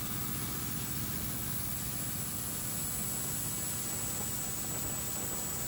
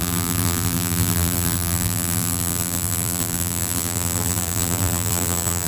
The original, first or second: first